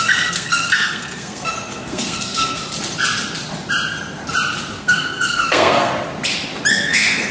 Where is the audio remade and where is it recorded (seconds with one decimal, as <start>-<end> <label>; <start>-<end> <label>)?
0.0-2.6 remade; 2.6-4.8 recorded; 4.8-5.9 remade; 5.9-6.7 recorded; 6.7-7.3 remade